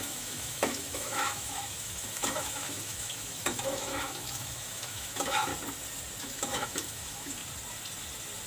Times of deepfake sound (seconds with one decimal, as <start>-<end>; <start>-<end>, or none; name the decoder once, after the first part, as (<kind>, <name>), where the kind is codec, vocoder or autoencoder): 0.0-5.5 (autoencoder, DAC-VAE); 6.2-7.4